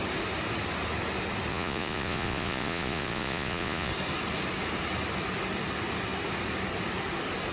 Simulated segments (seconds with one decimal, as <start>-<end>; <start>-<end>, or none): 1.5-3.9